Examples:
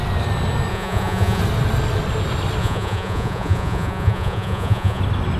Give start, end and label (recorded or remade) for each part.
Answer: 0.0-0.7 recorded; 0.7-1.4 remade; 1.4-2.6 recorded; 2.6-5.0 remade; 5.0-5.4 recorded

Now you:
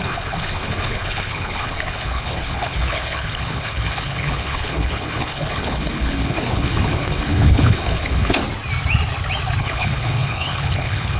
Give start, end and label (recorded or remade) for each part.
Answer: 0.0-8.4 remade; 8.4-9.6 recorded; 9.6-11.2 remade

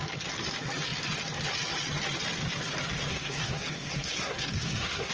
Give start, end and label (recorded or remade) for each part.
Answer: 0.0-3.1 recorded; 3.1-5.1 remade

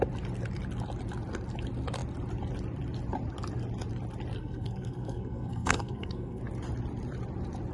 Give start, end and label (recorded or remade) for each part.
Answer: 0.0-4.4 recorded; 4.4-6.4 remade; 6.4-7.7 recorded

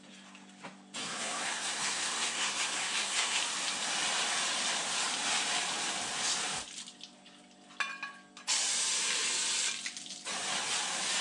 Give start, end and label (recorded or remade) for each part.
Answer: 0.0-1.0 recorded; 1.0-3.4 remade; 3.4-11.2 recorded

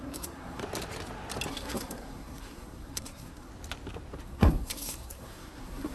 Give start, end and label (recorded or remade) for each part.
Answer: 0.0-0.6 remade; 0.6-1.5 recorded; 1.5-3.5 remade; 3.5-4.2 recorded; 4.2-5.9 remade

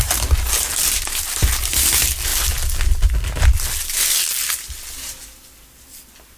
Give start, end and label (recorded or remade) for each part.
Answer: 0.0-6.4 recorded